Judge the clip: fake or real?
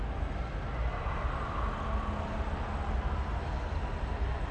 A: real